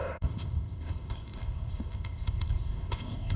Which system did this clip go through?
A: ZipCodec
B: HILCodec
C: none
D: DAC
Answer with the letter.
A